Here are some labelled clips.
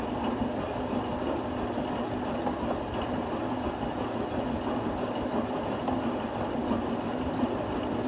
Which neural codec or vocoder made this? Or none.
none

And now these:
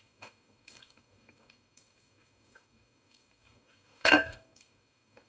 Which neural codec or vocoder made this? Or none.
codec, DAC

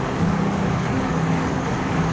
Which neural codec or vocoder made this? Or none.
codec, DAC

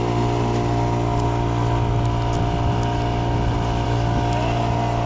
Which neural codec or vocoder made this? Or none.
none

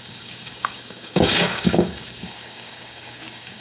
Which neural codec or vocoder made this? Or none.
codec, DAC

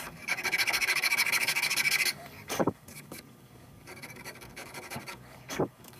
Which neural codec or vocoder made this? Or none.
codec, DAC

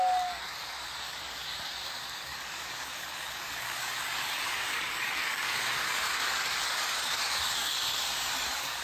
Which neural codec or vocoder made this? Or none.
codec, DAC